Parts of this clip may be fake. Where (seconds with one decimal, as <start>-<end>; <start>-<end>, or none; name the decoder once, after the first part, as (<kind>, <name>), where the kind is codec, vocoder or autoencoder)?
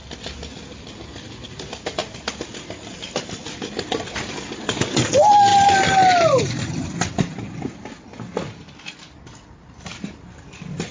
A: none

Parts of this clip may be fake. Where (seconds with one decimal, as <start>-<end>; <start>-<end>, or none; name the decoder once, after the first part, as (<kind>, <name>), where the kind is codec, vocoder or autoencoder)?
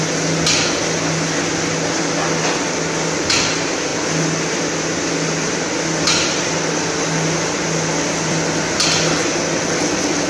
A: none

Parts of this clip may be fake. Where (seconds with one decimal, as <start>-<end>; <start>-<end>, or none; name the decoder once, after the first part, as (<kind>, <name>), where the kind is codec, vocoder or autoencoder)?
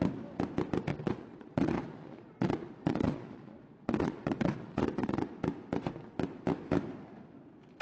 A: 0.9-5.3 (vocoder, Vocos)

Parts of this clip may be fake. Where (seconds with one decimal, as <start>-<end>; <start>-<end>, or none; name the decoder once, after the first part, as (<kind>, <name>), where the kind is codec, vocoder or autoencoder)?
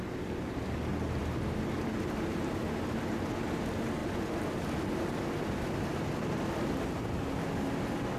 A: none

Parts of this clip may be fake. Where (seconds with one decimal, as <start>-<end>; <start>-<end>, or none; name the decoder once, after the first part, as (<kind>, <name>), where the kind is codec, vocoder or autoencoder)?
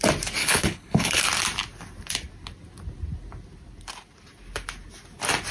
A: 0.4-1.2 (codec, HILCodec)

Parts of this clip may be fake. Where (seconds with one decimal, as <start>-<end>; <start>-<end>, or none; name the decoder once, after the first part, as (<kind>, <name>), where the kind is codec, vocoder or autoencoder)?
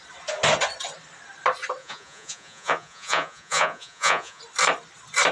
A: 1.8-4.4 (vocoder, Vocos)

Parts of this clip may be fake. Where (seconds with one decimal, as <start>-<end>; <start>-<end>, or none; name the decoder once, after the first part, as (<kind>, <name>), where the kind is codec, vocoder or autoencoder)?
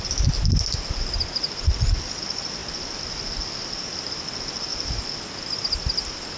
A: none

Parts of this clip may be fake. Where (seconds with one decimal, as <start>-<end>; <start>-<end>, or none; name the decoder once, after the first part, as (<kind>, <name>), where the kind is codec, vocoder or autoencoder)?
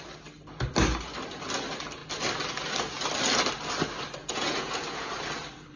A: 4.2-5.1 (vocoder, Vocos)